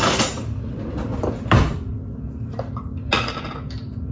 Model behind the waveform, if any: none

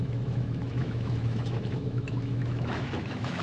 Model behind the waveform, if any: autoencoder, DAC-VAE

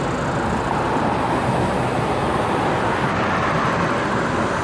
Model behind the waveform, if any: none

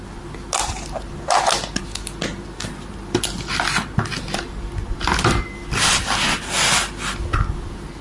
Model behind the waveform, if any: none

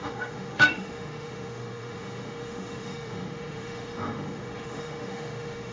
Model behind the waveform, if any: autoencoder, DAC-VAE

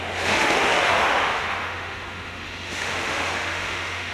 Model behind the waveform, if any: autoencoder, DAC-VAE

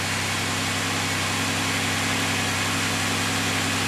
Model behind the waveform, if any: none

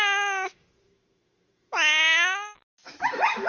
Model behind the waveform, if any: autoencoder, DAC-VAE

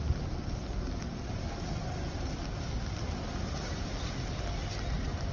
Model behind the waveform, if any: none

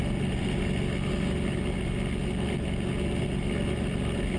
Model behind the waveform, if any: none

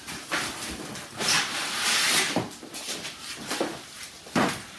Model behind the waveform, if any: none